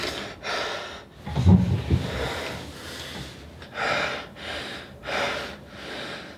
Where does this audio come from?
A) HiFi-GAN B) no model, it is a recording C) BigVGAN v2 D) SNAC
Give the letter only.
B